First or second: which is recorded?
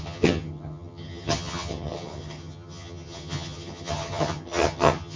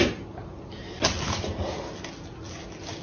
second